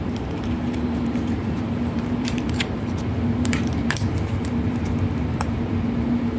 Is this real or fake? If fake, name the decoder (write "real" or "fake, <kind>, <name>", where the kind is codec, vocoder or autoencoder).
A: fake, vocoder, BigVGAN v2